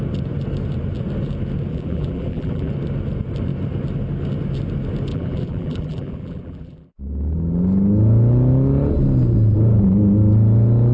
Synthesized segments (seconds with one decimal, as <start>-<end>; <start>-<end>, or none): 1.7-2.7; 5.1-7.0